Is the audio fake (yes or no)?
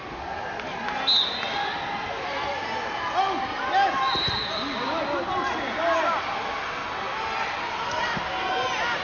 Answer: no